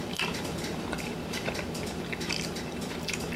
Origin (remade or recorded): remade